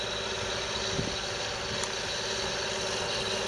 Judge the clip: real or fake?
real